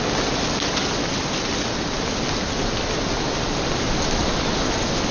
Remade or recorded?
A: recorded